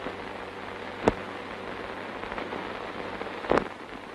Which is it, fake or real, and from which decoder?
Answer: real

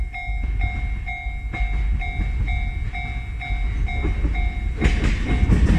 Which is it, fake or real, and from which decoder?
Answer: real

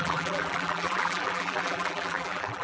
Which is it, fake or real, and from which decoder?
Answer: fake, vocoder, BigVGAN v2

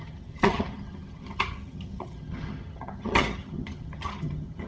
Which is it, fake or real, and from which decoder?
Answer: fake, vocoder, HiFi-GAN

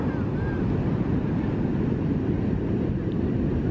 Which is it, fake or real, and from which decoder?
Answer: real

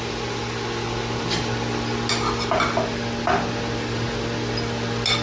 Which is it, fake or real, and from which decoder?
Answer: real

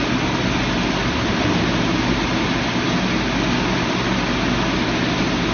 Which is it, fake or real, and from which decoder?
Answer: real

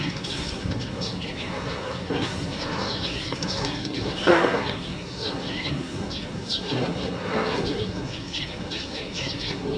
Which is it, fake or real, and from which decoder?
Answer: fake, codec, SNAC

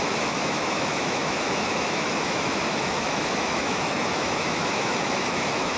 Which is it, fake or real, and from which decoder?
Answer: fake, autoencoder, DAC-VAE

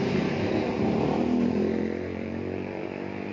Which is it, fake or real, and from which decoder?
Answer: fake, vocoder, BigVGAN v2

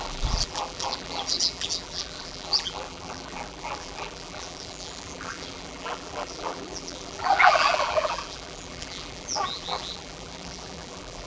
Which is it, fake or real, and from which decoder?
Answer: fake, vocoder, BigVGAN v2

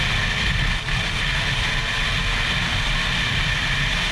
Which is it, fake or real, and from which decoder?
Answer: real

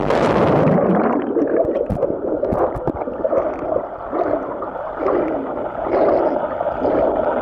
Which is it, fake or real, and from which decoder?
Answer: real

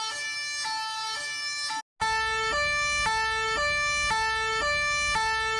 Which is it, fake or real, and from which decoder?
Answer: real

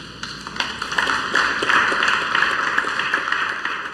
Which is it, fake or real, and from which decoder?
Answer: real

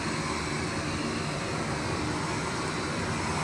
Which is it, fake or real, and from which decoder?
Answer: real